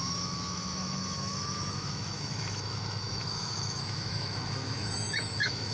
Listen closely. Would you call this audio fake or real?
fake